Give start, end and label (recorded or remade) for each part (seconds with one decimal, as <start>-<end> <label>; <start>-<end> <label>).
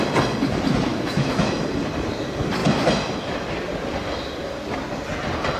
0.0-0.9 recorded; 0.9-1.5 remade; 1.5-5.6 recorded